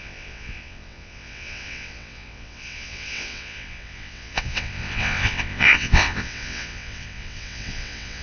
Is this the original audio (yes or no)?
no